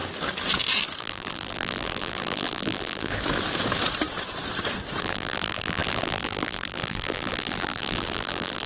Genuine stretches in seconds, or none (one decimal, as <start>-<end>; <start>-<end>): 0.0-1.0; 3.1-5.0